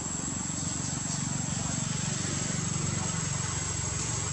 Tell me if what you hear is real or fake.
real